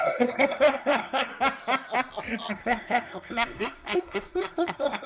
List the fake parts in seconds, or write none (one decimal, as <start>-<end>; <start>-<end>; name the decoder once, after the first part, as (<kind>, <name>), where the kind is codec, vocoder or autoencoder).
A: 0.0-1.3 (codec, SNAC); 2.5-5.1